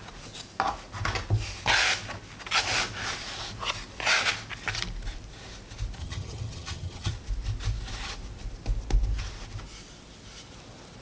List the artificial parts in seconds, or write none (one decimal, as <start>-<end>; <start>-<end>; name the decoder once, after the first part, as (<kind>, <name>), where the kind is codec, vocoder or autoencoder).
6.0-7.1 (vocoder, HiFi-GAN)